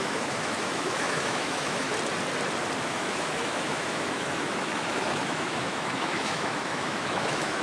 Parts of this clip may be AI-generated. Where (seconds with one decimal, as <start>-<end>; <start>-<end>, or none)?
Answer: 0.0-1.9; 2.8-7.6